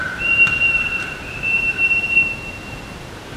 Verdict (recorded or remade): remade